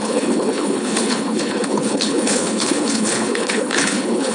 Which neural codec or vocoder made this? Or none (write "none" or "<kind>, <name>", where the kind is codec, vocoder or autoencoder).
codec, HILCodec